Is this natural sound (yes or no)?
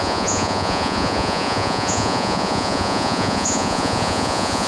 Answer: no